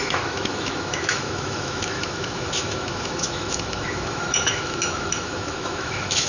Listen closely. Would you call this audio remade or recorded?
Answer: remade